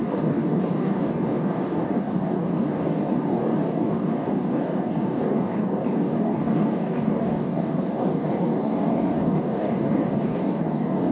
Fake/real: fake